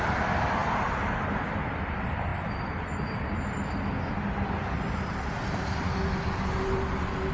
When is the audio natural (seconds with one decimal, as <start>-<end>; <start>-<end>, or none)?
0.0-7.3